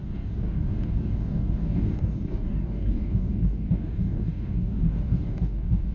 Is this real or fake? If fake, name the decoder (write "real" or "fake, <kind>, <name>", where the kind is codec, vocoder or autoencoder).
fake, codec, DAC